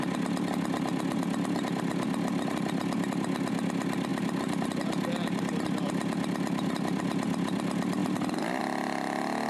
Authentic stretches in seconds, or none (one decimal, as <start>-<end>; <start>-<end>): 0.0-9.5